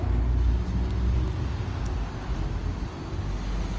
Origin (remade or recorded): recorded